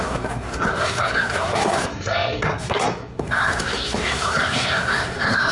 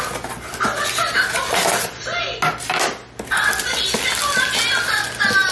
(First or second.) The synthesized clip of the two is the first